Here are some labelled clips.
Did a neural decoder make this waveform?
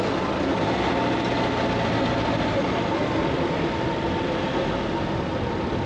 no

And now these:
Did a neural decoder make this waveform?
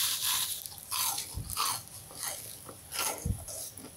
no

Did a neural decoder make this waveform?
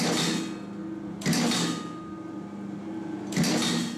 no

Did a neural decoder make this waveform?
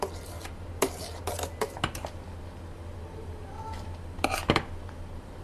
no